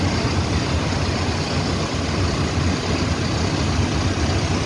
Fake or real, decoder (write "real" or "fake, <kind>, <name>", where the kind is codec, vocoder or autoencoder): real